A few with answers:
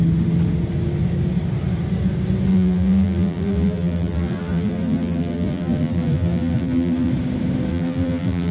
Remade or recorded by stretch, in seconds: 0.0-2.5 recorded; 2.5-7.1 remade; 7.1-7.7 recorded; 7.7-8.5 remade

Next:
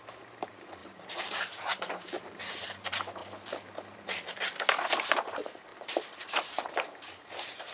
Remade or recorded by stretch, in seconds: 0.0-3.2 remade; 3.2-5.1 recorded; 5.1-7.7 remade

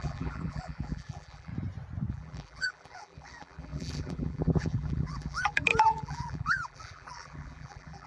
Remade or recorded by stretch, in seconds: 0.0-1.5 remade; 1.5-2.1 recorded; 2.1-8.1 remade

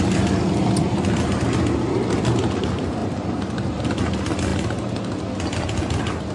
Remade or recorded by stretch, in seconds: 0.0-6.3 recorded

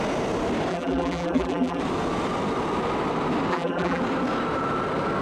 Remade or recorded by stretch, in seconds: 0.0-0.7 recorded; 0.7-1.8 remade; 1.8-3.5 recorded; 3.5-4.0 remade; 4.0-5.2 recorded

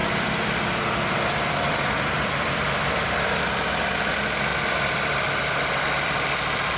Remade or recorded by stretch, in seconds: 0.0-4.1 remade; 4.1-4.5 recorded; 4.5-6.3 remade; 6.3-6.8 recorded

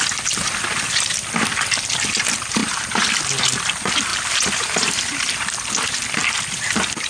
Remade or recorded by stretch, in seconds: 0.0-2.6 recorded; 2.6-3.2 remade; 3.2-4.1 recorded; 4.1-5.3 remade; 5.3-6.2 recorded; 6.2-7.1 remade